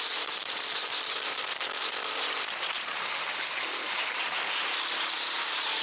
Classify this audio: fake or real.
fake